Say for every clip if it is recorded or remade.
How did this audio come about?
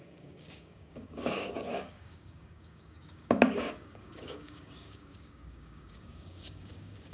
remade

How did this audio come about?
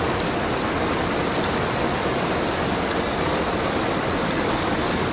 recorded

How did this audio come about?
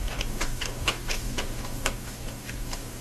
remade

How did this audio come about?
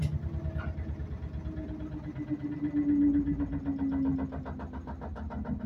recorded